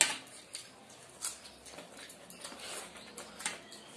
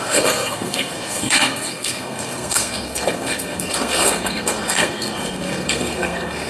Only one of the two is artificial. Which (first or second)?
second